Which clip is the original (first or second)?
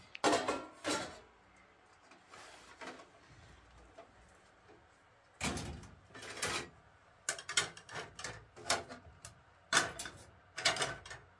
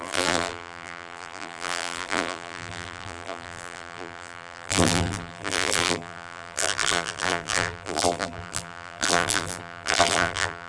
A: first